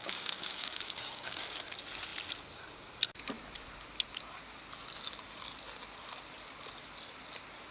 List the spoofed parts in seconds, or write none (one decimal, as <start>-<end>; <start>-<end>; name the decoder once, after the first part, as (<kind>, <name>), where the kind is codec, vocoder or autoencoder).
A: 0.0-1.4 (codec, DAC)